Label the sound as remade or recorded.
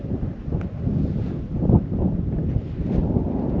remade